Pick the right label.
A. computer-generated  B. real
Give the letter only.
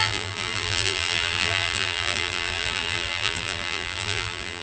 A